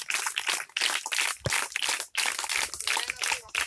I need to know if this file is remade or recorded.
recorded